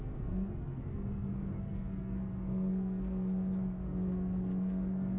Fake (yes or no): yes